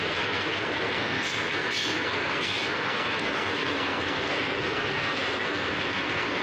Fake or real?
fake